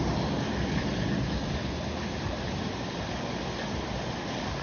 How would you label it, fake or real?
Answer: real